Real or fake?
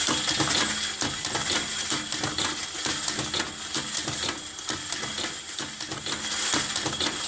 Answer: real